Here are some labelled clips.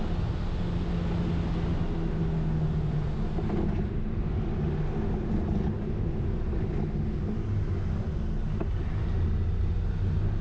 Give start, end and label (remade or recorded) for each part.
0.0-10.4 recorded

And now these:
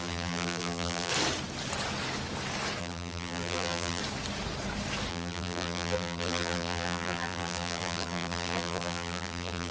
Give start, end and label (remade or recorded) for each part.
0.0-1.1 remade; 1.1-2.8 recorded; 2.8-4.0 remade; 4.0-5.1 recorded; 5.1-9.7 remade

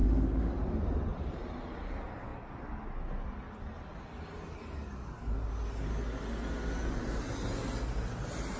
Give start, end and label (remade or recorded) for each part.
0.0-0.5 remade; 0.5-8.6 recorded

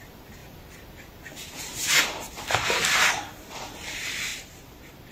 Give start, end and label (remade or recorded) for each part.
0.0-4.3 recorded; 4.3-5.1 remade

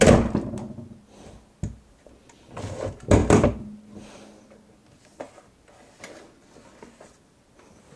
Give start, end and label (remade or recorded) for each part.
0.0-8.0 recorded